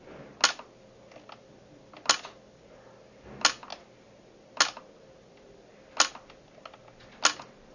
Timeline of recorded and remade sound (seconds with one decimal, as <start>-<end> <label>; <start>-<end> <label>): 0.0-7.7 recorded